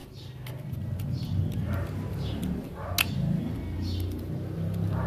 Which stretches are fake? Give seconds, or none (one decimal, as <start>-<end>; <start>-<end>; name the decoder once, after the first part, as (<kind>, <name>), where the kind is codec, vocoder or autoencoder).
none